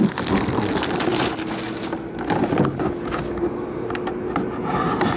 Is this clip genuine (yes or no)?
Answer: yes